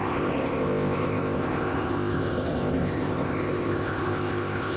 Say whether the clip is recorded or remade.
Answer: remade